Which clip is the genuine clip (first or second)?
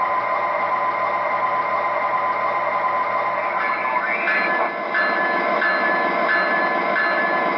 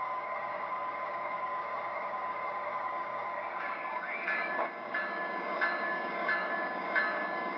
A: first